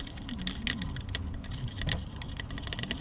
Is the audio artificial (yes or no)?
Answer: no